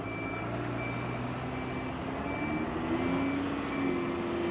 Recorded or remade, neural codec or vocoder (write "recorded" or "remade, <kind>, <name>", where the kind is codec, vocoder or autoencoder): recorded